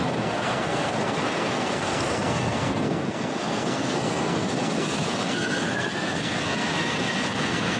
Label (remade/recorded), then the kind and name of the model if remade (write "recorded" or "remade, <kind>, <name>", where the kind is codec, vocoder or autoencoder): remade, codec, SNAC